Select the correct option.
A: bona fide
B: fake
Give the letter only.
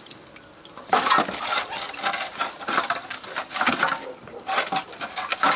A